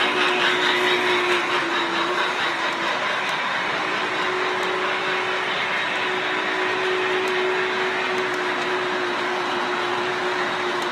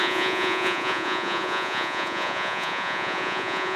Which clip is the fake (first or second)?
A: second